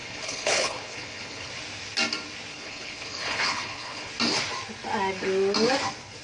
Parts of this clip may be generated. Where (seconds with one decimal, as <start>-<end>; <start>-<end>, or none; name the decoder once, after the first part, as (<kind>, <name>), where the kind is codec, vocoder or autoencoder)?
0.0-1.5 (codec, HILCodec); 2.5-4.1